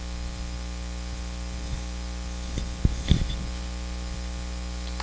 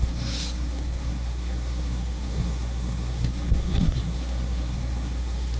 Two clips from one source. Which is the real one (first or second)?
first